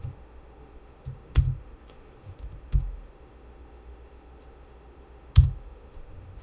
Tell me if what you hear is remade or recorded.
remade